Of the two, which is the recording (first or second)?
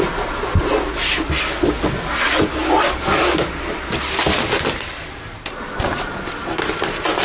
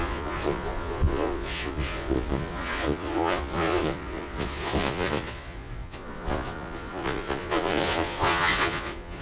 first